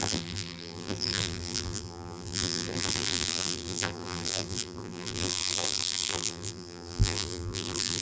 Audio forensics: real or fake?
fake